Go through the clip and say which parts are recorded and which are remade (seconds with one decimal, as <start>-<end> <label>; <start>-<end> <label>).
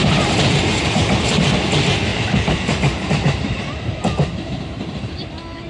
0.0-0.6 remade; 0.6-2.1 recorded; 2.1-5.7 remade